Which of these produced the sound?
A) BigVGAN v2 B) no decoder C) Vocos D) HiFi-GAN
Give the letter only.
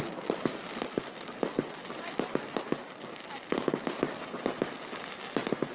B